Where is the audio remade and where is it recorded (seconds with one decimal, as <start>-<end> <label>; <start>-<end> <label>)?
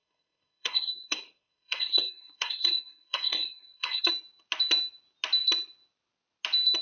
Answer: 0.0-4.1 remade; 4.1-6.8 recorded